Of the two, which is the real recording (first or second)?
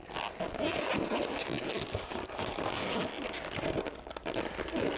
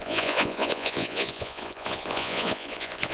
first